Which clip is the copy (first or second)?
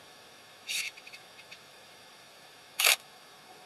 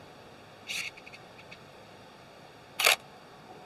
first